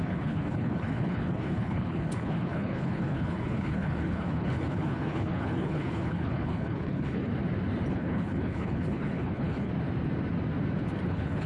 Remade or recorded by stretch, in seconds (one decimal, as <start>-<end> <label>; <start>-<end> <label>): 0.0-7.3 remade; 7.3-7.9 recorded; 7.9-9.7 remade; 9.7-11.1 recorded; 11.1-11.5 remade